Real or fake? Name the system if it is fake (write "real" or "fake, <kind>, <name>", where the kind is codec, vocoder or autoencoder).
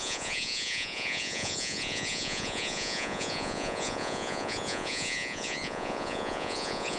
fake, vocoder, Vocos